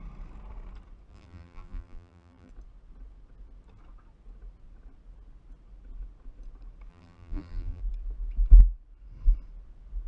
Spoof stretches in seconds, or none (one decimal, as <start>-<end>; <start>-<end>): 1.1-2.5; 6.9-7.8